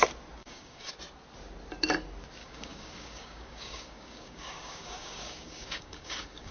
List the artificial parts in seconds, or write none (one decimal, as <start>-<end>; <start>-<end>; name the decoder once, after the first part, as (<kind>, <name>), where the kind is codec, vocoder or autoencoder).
0.4-0.9 (codec, DAC); 2.4-6.5